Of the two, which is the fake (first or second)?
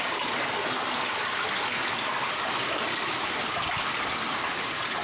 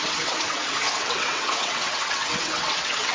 second